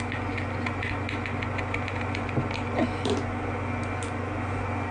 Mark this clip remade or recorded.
recorded